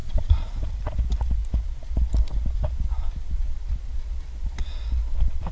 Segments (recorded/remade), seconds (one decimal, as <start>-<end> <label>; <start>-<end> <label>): 0.0-0.7 remade; 0.7-5.5 recorded